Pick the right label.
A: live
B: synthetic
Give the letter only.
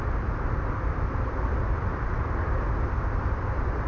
A